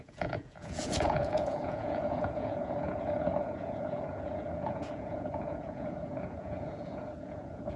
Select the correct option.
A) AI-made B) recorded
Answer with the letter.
A